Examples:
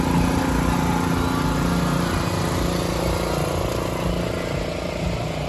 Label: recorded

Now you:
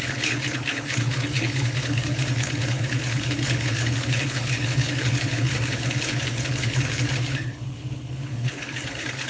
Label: remade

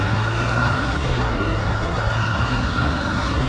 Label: remade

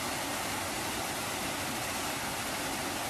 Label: recorded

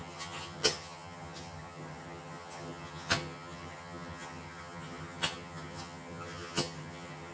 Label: remade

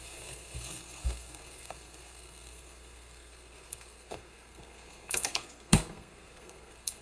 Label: remade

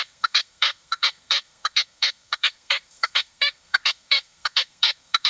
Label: remade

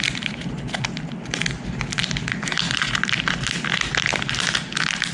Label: recorded